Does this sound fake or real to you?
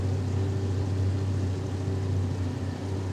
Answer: real